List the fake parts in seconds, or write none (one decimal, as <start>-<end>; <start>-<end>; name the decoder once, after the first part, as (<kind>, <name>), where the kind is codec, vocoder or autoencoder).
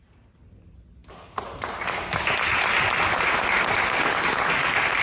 none